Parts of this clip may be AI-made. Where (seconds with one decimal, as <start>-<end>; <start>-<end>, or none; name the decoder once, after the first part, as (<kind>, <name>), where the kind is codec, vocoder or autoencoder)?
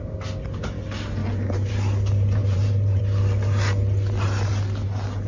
1.2-1.7 (vocoder, BigVGAN v2); 2.4-3.0